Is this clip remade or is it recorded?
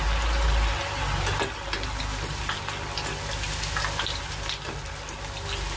recorded